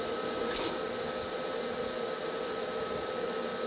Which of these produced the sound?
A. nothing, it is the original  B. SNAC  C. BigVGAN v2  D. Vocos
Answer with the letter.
A